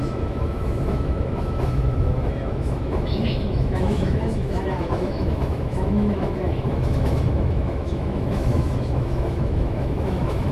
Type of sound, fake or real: fake